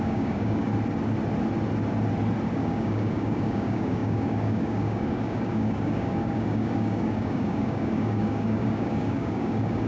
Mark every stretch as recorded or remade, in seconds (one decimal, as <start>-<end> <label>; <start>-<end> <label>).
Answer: 0.0-0.7 remade; 0.7-2.5 recorded; 2.5-9.9 remade